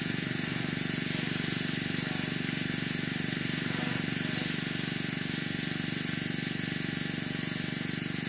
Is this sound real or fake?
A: real